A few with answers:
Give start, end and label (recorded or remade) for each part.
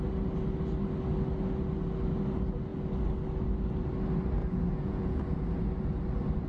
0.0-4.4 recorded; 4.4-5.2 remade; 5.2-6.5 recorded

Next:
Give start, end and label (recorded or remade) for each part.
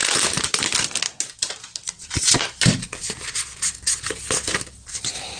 0.0-2.9 recorded; 2.9-4.0 remade; 4.0-5.4 recorded